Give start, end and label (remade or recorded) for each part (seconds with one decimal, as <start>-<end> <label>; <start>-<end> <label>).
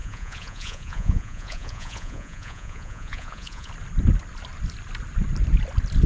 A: 0.0-3.7 remade; 3.7-6.1 recorded